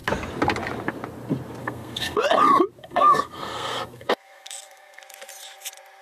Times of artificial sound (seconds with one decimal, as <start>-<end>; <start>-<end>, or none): 1.6-2.2; 2.8-5.0